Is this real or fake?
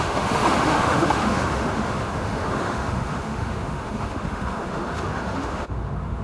fake